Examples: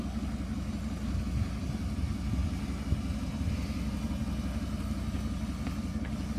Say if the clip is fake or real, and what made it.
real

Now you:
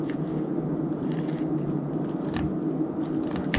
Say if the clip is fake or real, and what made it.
real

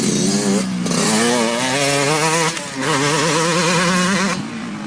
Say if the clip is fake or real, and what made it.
real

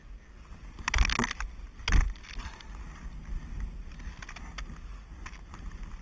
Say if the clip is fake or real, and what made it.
real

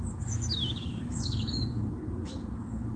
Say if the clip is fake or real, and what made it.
fake, autoencoder, DAC-VAE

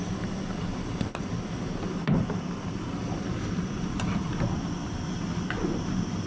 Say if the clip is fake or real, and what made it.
real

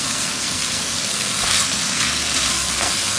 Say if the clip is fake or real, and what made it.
fake, codec, SNAC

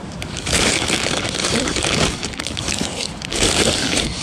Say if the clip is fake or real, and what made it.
fake, codec, DAC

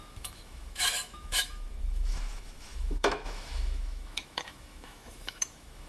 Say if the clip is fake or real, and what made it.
fake, autoencoder, DAC-VAE